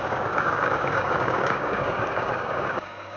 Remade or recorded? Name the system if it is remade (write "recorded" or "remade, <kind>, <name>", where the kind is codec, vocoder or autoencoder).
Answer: remade, codec, DAC